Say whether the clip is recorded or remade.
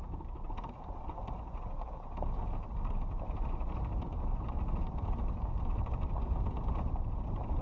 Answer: recorded